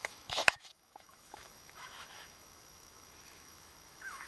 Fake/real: fake